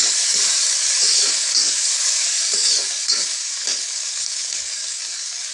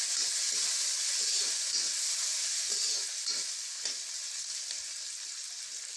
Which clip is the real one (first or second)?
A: second